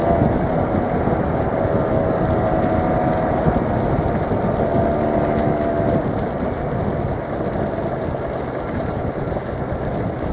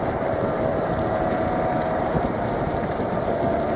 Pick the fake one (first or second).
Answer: second